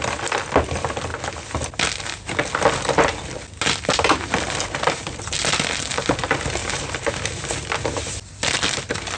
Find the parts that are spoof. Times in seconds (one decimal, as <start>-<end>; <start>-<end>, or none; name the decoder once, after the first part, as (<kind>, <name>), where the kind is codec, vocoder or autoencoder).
6.6-7.2 (vocoder, BigVGAN v2)

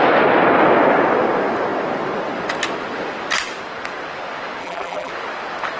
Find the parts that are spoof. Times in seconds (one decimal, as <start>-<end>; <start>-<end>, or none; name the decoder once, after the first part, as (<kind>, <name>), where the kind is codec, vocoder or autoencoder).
4.6-5.1 (vocoder, BigVGAN v2)

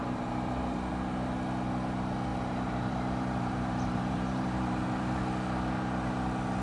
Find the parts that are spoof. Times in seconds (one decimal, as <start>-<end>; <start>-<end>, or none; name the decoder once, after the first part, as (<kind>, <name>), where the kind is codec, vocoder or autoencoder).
0.0-0.9 (vocoder, BigVGAN v2); 2.3-5.2